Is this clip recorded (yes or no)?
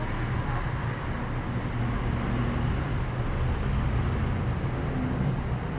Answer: yes